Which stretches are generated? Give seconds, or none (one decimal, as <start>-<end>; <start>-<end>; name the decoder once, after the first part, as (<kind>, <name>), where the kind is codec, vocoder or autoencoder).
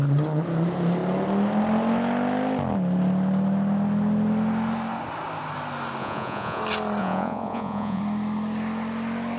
6.0-6.6 (vocoder, Vocos); 7.0-8.0